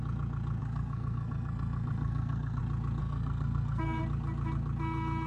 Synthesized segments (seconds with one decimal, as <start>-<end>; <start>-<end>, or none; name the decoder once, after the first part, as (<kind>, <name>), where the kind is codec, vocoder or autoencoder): 0.6-2.6 (codec, SNAC); 3.0-4.0